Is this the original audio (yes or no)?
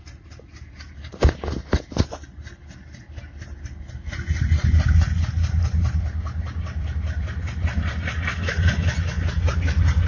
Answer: yes